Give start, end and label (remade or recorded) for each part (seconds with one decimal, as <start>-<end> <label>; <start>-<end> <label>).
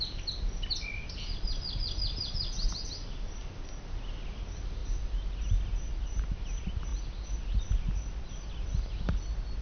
0.0-9.6 recorded